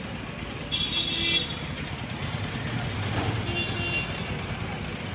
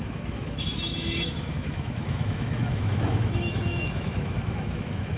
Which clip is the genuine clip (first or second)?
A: first